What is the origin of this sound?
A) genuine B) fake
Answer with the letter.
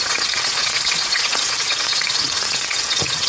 B